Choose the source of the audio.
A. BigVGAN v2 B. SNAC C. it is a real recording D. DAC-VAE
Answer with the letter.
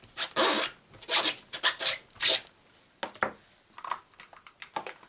C